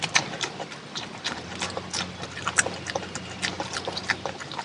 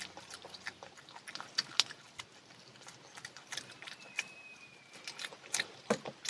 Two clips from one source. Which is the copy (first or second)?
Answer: first